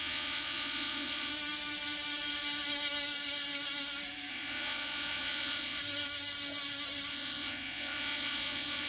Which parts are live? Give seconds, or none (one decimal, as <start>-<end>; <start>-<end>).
1.3-4.3; 5.8-7.1